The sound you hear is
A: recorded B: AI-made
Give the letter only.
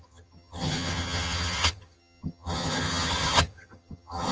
B